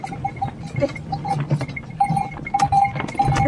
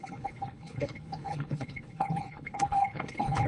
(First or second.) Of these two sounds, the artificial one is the second